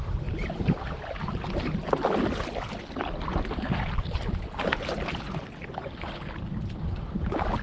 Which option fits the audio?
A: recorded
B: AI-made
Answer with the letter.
A